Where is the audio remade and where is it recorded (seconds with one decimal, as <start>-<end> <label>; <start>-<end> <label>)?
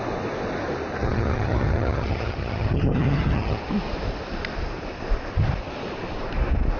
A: 0.0-1.0 recorded; 1.0-3.6 remade; 3.6-6.8 recorded